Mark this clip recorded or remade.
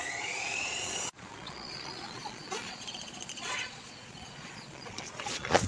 remade